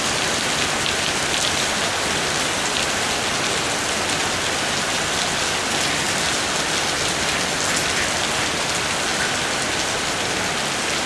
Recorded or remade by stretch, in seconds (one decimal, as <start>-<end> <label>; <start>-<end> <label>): 0.0-11.1 recorded